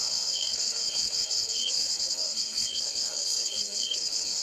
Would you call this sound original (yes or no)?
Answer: no